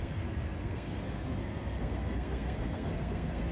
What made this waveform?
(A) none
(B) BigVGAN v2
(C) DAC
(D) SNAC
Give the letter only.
D